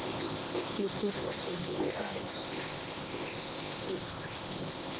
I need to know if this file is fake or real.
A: fake